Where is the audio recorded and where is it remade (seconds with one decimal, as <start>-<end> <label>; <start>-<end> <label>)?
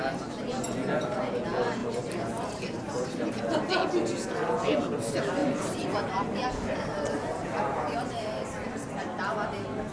0.0-1.8 recorded; 1.8-3.4 remade; 3.4-5.4 recorded; 5.4-8.9 remade; 8.9-9.9 recorded